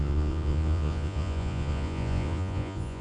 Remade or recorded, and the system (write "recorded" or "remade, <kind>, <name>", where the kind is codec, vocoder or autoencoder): remade, vocoder, Vocos